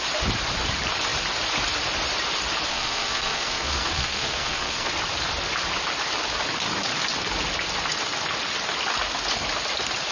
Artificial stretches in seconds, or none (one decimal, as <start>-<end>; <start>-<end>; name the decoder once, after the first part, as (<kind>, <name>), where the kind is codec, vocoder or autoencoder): 2.7-4.9 (codec, SNAC)